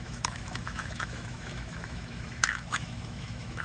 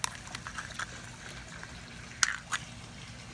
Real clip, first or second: second